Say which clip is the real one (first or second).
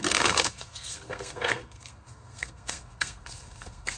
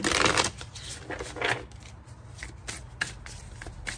second